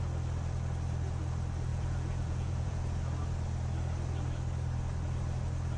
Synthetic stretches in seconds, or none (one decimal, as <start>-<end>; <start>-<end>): 1.7-3.0